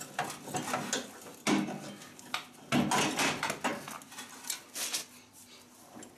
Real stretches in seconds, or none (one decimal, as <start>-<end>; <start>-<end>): 0.0-6.2